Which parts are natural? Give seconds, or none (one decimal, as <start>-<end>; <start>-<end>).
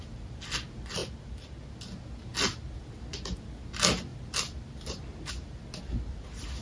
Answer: 0.0-6.6